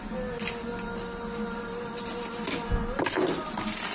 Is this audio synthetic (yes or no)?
no